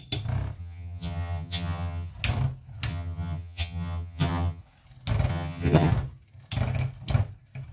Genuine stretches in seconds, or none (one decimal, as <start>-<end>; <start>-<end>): 0.0-0.6; 2.1-2.9; 4.6-5.3; 5.9-7.7